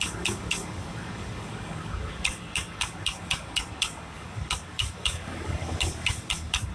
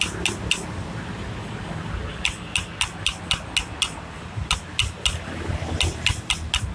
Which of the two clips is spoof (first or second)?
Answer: first